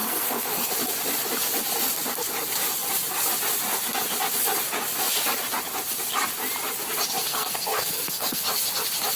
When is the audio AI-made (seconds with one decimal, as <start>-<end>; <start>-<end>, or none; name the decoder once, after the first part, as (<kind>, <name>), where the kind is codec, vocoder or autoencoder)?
0.0-0.7 (codec, SNAC); 7.2-8.4